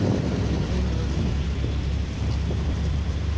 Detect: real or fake fake